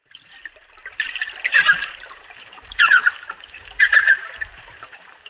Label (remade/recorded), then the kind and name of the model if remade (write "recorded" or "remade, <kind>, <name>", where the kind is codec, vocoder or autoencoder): remade, vocoder, BigVGAN v2